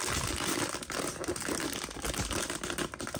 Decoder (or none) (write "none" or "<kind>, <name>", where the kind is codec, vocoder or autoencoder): none